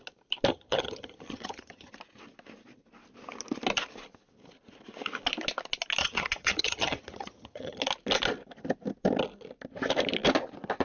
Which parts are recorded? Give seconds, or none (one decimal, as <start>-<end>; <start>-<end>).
0.0-0.5; 1.9-6.0; 7.8-10.8

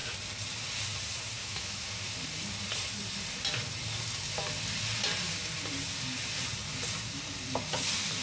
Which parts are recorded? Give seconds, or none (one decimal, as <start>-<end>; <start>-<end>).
0.0-1.4; 1.9-8.2

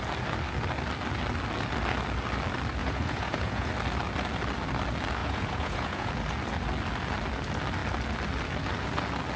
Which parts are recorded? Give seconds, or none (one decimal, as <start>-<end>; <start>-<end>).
0.0-2.8; 3.7-5.2; 6.1-9.4

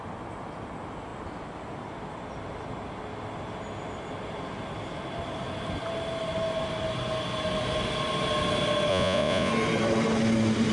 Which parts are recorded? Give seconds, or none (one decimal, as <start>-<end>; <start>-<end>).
0.0-8.9; 9.5-10.7

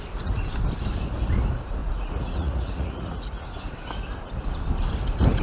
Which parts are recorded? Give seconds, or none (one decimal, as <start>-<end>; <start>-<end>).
0.0-1.8; 3.4-5.4

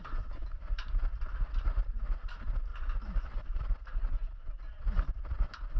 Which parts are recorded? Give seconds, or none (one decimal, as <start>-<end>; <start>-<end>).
0.0-5.8

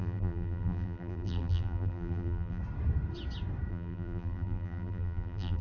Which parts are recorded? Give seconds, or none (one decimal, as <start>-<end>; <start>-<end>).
2.6-3.7

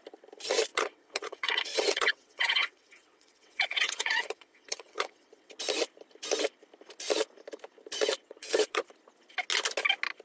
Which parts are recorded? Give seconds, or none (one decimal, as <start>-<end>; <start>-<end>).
0.0-0.7; 5.5-8.2; 8.8-10.2